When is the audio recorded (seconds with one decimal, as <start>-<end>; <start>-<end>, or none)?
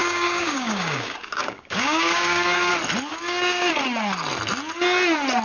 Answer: 2.7-3.1; 3.7-5.4